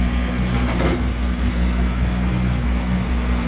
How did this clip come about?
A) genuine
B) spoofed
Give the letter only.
B